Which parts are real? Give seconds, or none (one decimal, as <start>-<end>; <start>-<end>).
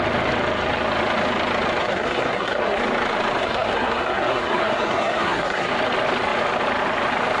0.0-1.8; 2.8-3.4; 5.7-7.4